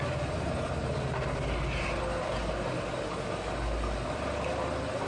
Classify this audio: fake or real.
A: real